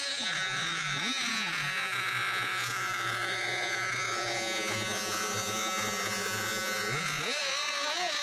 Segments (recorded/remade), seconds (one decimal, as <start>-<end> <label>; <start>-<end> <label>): 0.0-8.2 remade